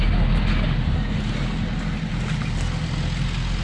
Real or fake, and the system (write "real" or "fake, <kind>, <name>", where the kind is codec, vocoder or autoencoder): real